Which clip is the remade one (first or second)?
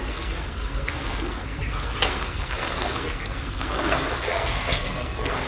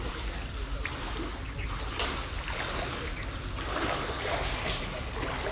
first